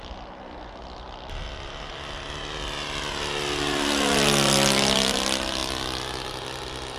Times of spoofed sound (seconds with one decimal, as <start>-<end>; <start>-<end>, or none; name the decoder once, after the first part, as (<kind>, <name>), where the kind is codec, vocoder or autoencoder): none